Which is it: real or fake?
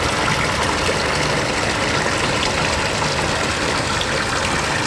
real